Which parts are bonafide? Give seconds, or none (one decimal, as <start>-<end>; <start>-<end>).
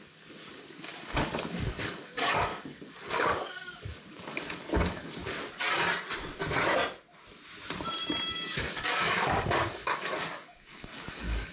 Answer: 5.2-8.3